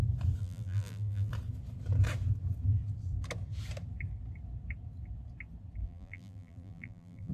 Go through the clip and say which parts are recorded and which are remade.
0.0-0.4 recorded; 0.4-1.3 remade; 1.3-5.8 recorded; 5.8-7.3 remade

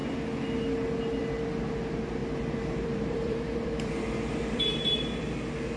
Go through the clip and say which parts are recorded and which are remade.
0.0-2.2 recorded; 2.2-5.8 remade

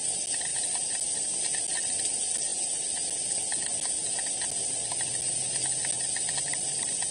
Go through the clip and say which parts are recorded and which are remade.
0.0-7.1 recorded

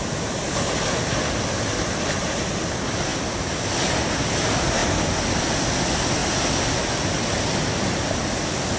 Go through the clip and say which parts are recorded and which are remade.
0.0-8.8 recorded

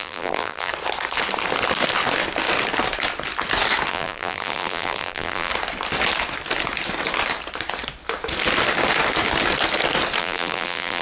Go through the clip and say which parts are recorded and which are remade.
0.0-0.7 remade; 0.7-3.9 recorded; 3.9-5.5 remade; 5.5-10.2 recorded; 10.2-11.0 remade

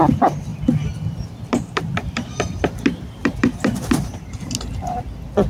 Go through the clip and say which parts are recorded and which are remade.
0.0-0.5 recorded; 0.5-3.8 remade; 3.8-5.5 recorded